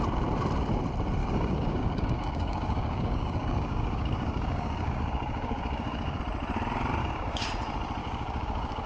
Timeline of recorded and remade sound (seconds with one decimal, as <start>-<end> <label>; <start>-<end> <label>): 0.0-1.2 recorded; 1.2-6.2 remade; 6.2-7.0 recorded; 7.0-7.5 remade; 7.5-8.0 recorded; 8.0-8.9 remade